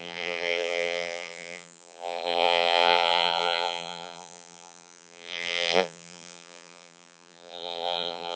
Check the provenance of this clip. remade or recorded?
remade